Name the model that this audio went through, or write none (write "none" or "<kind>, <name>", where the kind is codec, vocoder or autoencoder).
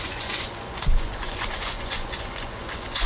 vocoder, Vocos